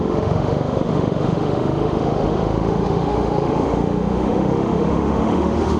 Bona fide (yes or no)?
no